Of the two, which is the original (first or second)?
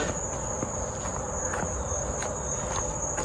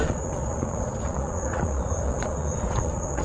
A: first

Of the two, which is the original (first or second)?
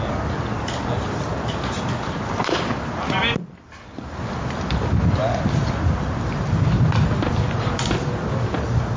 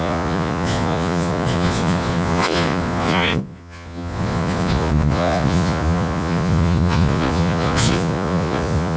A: first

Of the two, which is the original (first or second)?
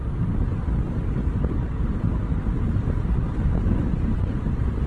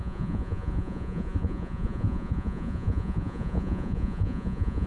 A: first